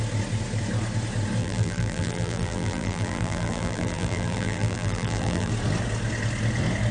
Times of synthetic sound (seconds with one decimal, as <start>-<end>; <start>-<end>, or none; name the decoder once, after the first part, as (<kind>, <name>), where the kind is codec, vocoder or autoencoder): 1.4-5.5 (vocoder, BigVGAN v2)

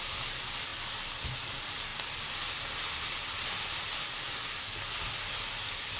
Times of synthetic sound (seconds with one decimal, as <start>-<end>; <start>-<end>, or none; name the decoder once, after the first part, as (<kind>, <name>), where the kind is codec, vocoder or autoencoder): none

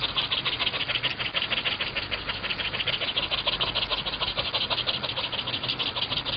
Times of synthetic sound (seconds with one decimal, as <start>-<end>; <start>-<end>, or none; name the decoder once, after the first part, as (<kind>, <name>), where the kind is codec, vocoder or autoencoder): none

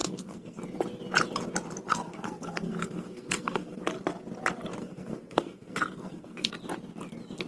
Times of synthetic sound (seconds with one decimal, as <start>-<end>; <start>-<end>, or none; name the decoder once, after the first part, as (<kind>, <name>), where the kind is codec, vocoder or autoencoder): 0.0-0.6 (codec, SNAC); 1.9-3.8; 4.8-6.5

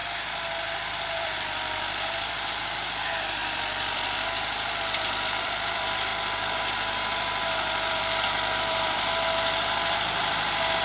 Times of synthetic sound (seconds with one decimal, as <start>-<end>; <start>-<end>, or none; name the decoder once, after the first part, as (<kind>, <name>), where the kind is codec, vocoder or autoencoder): 0.9-6.1 (vocoder, BigVGAN v2); 7.9-10.8

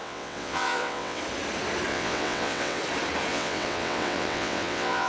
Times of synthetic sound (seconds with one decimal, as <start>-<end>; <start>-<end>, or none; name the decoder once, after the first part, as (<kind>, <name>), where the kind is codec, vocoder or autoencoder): 0.0-1.2 (vocoder, WaveNeXt); 1.9-2.8; 3.3-5.1

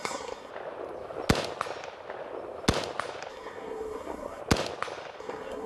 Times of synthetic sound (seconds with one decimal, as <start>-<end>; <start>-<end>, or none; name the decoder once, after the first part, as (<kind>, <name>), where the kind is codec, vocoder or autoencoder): 0.0-0.5 (codec, SNAC); 3.3-4.4; 5.2-5.7

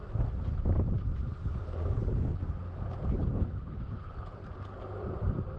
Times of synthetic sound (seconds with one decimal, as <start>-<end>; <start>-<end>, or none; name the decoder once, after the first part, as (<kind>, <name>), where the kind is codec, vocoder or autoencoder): 2.0-2.4 (codec, HILCodec); 3.1-4.4